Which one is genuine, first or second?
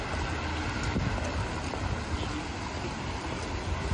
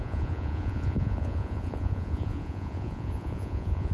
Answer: first